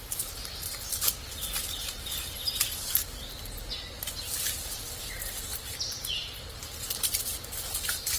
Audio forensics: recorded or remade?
recorded